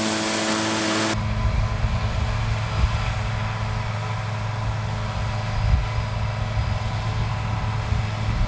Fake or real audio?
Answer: real